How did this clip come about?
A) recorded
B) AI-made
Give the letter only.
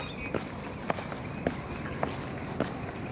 A